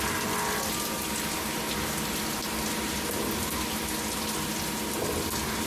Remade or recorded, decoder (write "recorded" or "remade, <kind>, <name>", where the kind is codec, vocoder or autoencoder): recorded